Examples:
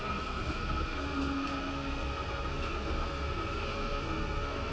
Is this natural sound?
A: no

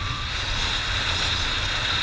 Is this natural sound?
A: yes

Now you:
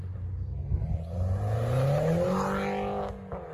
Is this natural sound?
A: yes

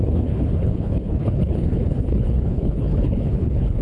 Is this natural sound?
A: no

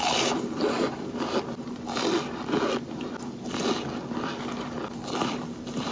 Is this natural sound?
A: yes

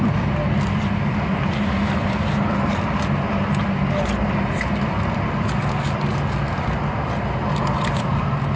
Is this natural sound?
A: yes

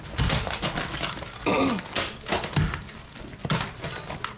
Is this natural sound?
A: yes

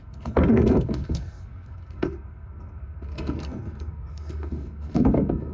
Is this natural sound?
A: no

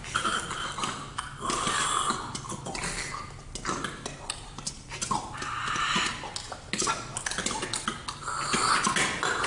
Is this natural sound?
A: yes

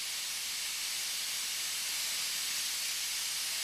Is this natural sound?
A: yes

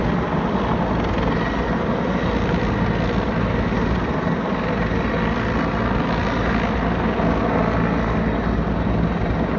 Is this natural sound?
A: yes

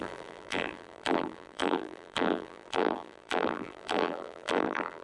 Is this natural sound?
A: no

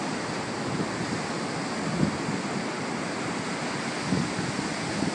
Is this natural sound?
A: yes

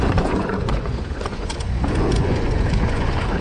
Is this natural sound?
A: no